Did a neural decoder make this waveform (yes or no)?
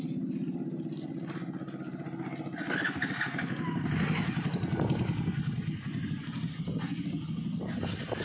no